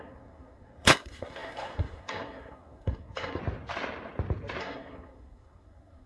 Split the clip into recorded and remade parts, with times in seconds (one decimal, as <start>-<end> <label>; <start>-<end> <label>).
0.0-3.4 remade; 3.4-4.6 recorded; 4.6-6.1 remade